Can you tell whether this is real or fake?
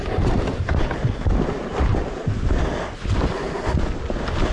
real